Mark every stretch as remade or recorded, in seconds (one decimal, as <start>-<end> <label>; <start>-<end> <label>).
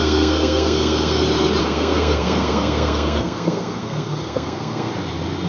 0.0-1.2 remade; 1.2-1.6 recorded; 1.6-4.9 remade; 4.9-5.5 recorded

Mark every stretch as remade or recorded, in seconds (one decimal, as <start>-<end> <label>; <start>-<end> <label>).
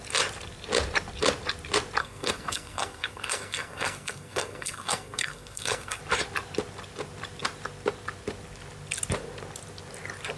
0.0-2.0 recorded; 2.0-6.0 remade; 6.0-10.4 recorded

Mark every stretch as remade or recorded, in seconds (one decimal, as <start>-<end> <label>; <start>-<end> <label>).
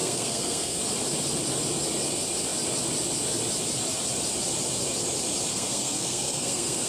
0.0-0.8 remade; 0.8-5.5 recorded; 5.5-6.9 remade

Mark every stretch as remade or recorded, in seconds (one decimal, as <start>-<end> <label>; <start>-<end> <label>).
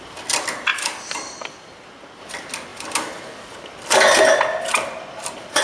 0.0-5.6 recorded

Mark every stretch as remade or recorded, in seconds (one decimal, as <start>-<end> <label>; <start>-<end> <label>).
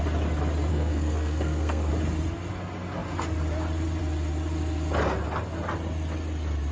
0.0-0.7 recorded; 0.7-1.9 remade; 1.9-6.7 recorded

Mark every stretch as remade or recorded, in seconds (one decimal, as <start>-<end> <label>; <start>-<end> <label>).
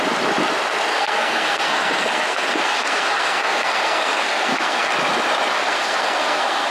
0.0-0.9 recorded; 0.9-4.9 remade; 4.9-5.5 recorded; 5.5-6.7 remade